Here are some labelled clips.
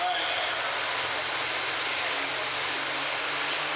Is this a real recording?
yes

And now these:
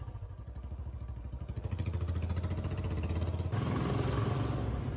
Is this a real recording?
yes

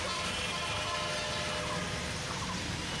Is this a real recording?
yes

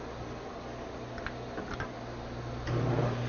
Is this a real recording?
yes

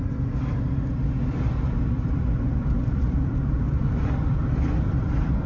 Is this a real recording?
yes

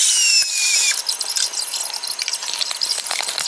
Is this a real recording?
yes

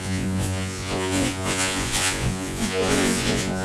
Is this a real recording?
no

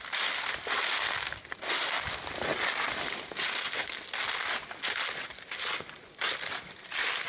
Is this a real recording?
yes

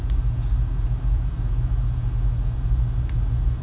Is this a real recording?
yes